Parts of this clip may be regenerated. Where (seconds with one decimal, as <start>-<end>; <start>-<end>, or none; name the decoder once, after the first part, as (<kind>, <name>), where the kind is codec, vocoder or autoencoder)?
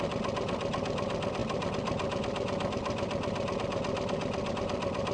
none